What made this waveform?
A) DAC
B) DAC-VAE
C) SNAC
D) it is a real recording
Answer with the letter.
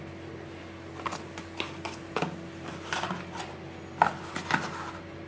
D